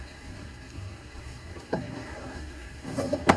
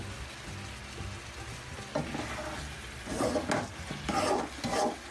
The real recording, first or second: second